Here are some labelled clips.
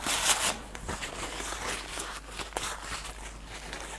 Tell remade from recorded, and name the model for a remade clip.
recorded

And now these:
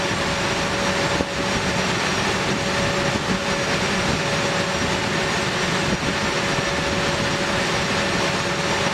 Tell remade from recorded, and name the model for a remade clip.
recorded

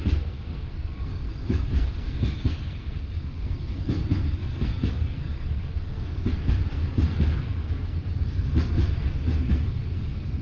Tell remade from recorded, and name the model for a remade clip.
remade, codec, SNAC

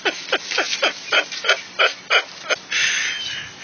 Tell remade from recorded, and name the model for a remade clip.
recorded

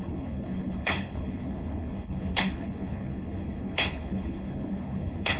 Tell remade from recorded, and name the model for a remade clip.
remade, codec, HILCodec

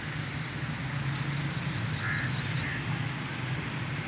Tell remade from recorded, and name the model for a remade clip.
recorded